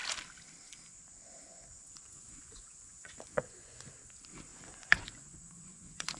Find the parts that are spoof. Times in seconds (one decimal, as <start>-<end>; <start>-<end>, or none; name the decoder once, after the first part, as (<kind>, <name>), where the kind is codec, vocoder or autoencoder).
1.5-3.9 (vocoder, Vocos); 4.5-6.2